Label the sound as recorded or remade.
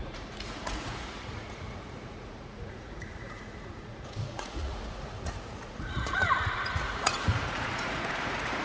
remade